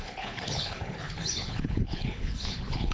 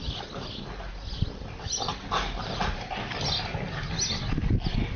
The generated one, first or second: first